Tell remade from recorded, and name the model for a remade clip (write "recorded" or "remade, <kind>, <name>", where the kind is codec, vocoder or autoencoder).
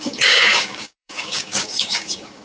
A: remade, codec, DAC